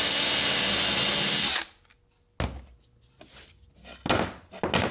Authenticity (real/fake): real